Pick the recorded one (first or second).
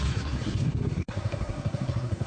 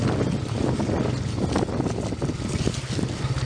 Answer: second